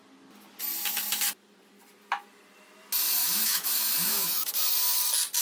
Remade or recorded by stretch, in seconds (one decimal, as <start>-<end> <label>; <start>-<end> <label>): 0.0-3.2 recorded; 3.2-4.5 remade; 4.5-5.4 recorded